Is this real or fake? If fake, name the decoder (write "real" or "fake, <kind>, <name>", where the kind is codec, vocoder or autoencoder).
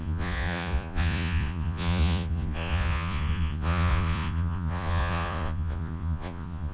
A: fake, vocoder, Vocos